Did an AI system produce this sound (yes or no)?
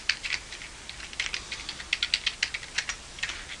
no